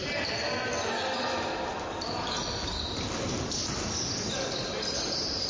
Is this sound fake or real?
real